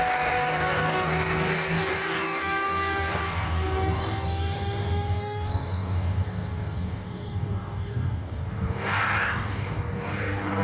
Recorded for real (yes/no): no